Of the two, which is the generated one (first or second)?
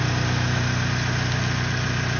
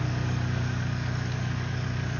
second